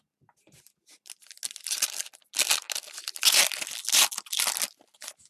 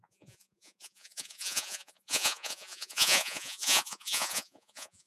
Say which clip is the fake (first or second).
second